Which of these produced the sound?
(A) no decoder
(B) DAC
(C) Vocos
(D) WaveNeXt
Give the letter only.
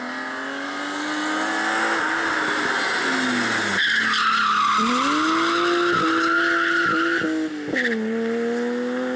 A